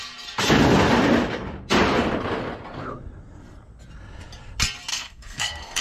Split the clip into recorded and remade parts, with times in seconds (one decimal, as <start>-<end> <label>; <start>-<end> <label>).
0.0-4.9 recorded; 4.9-5.8 remade

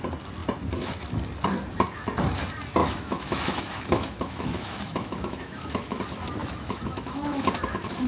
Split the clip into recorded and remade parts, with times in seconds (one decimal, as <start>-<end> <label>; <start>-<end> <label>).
0.0-2.8 recorded; 2.8-6.0 remade; 6.0-6.4 recorded; 6.4-8.1 remade

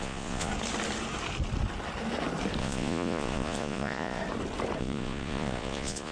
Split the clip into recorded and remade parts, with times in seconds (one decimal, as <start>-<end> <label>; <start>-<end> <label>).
0.0-0.5 remade; 0.5-2.6 recorded; 2.6-4.2 remade; 4.2-4.8 recorded; 4.8-6.1 remade

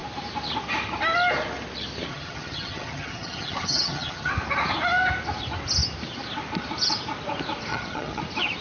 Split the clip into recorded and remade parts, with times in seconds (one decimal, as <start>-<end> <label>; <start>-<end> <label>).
0.0-2.1 recorded; 2.1-4.3 remade; 4.3-7.7 recorded; 7.7-8.2 remade; 8.2-8.6 recorded

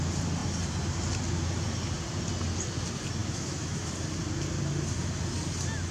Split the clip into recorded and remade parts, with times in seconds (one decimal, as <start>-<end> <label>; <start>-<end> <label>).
0.0-3.2 recorded; 3.2-3.9 remade; 3.9-5.9 recorded

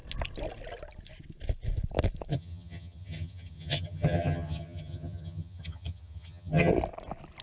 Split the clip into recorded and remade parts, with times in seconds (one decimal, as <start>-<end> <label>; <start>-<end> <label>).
0.0-2.3 recorded; 2.3-6.7 remade; 6.7-7.4 recorded